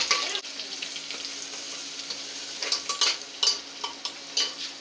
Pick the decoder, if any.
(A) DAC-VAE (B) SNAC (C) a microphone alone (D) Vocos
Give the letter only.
C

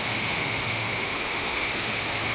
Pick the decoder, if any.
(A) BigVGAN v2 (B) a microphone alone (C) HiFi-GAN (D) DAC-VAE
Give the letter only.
D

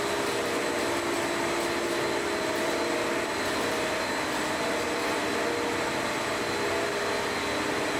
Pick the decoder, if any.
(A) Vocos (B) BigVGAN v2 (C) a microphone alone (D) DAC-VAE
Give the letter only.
C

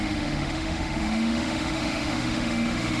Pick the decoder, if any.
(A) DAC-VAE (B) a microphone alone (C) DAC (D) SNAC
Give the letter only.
A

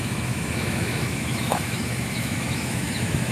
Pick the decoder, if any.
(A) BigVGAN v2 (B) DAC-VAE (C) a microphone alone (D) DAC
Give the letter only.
B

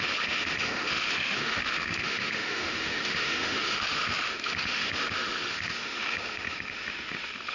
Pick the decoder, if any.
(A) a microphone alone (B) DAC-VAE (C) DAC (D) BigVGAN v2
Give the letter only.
B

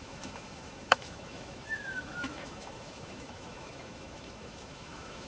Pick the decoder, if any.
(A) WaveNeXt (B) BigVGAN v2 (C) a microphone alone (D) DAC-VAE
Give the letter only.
D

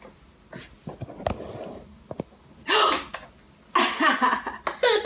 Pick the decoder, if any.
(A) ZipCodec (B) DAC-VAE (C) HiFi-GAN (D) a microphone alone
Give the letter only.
D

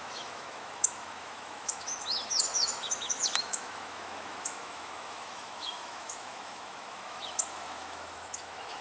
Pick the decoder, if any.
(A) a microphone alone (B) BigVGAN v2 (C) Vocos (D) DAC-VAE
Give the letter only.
D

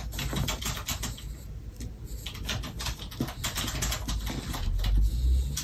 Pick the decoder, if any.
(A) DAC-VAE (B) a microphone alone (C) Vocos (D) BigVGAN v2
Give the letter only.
B